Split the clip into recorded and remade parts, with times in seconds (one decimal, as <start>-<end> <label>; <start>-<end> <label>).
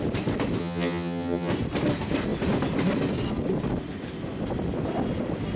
0.0-0.6 recorded; 0.6-1.5 remade; 1.5-5.6 recorded